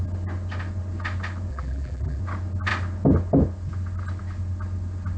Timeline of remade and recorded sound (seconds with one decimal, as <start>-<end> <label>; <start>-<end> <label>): 0.0-1.5 recorded; 1.5-2.2 remade; 2.2-5.2 recorded